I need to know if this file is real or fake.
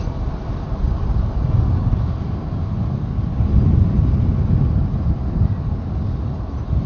real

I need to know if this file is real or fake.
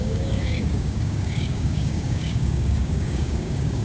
fake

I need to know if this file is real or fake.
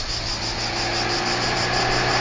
real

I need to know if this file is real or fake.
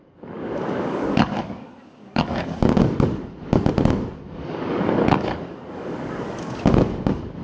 fake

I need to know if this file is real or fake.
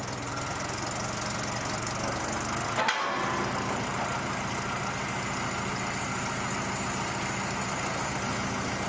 real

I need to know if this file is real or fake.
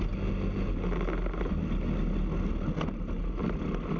real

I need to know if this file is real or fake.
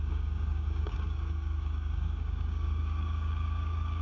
fake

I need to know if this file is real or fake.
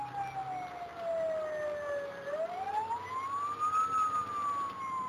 real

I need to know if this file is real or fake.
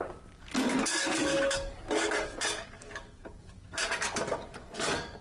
fake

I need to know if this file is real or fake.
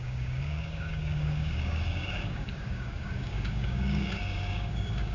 fake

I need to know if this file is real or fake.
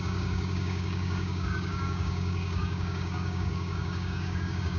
fake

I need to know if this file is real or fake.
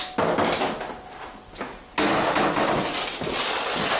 real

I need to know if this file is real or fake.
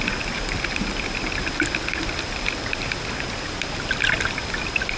real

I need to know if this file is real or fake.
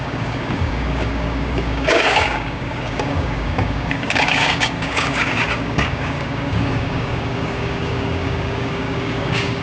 fake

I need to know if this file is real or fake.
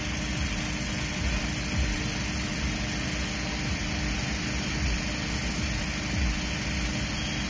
real